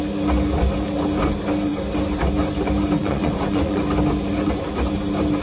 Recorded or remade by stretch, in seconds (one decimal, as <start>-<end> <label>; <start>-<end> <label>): 0.0-3.0 recorded; 3.0-3.8 remade; 3.8-5.4 recorded